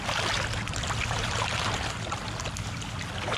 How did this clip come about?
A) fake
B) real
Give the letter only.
B